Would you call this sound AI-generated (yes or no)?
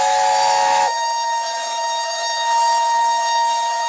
yes